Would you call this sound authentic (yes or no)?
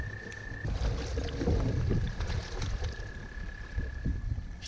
yes